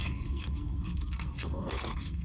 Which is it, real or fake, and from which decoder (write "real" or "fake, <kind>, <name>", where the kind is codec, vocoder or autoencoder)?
fake, codec, SNAC